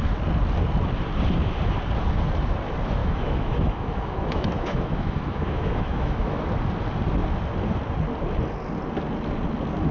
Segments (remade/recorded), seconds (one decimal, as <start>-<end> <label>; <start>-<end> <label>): 0.0-3.0 recorded; 3.0-6.4 remade; 6.4-9.9 recorded